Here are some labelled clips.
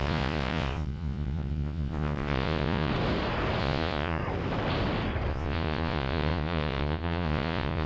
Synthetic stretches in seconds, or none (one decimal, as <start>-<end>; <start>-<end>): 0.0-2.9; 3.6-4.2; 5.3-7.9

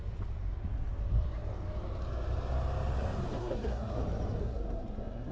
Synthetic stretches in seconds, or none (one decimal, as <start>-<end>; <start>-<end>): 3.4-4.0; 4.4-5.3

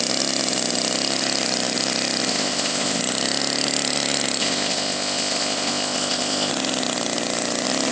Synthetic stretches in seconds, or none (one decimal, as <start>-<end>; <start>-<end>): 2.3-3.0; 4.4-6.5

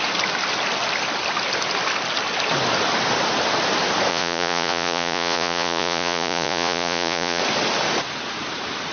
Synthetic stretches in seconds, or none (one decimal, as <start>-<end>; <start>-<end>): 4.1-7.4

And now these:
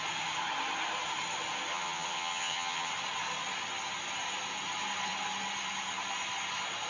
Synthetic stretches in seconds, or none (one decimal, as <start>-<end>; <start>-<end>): 1.7-2.9

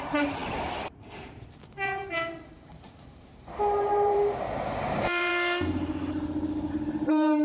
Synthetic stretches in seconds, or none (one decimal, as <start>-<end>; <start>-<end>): 0.0-5.3; 6.7-7.4

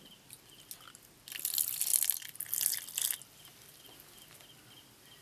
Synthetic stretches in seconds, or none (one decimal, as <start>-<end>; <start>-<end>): none

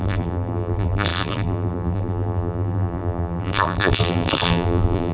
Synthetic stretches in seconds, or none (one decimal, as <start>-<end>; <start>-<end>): 0.0-5.1